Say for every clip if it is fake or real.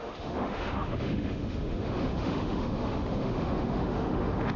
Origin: fake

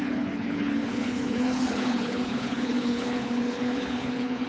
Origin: fake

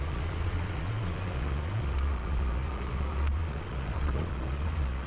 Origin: fake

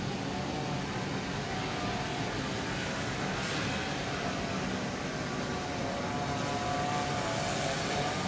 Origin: real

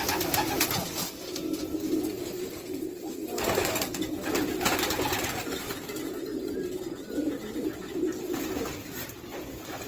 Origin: real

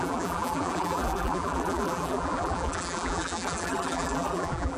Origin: fake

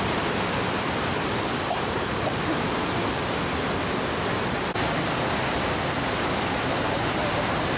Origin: real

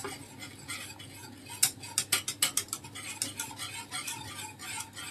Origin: real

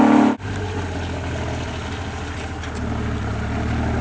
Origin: real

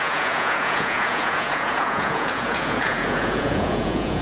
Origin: fake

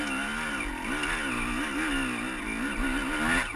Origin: real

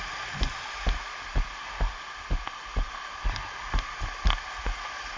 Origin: real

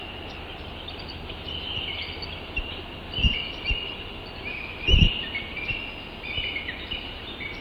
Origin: real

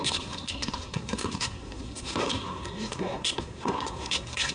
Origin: fake